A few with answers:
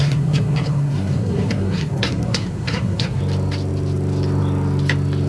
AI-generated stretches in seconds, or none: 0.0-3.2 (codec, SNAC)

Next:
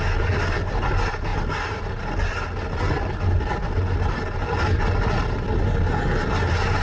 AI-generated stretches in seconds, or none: none

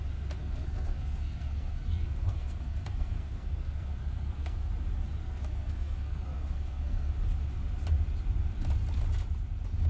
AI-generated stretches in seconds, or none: 0.4-4.7 (codec, SNAC); 5.2-7.1

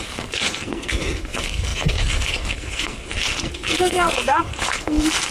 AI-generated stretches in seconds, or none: 0.0-5.3 (codec, SNAC)

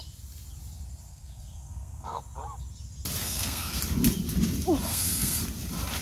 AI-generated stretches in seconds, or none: 1.1-2.2 (codec, SNAC); 3.2-3.8; 4.9-5.4

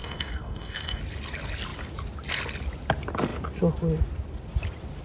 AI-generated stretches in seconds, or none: 0.0-1.0 (codec, SNAC)

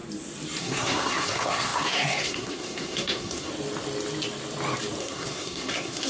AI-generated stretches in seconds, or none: 0.6-3.5 (codec, SNAC); 5.0-6.1